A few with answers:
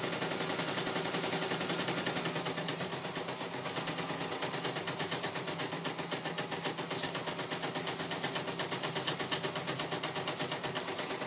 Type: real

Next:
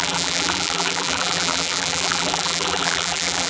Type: fake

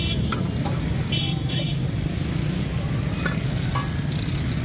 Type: real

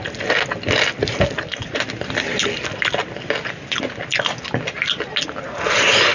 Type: real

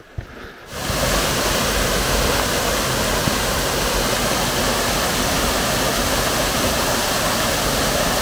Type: real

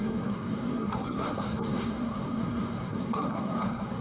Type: fake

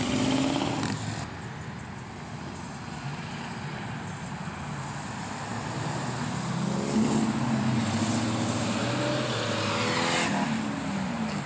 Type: real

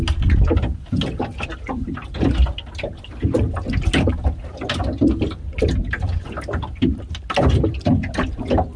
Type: real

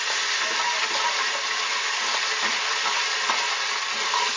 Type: real